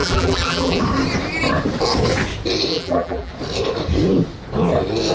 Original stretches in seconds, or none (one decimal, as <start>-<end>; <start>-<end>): 0.8-2.7; 3.3-5.1